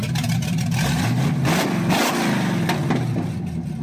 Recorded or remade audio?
recorded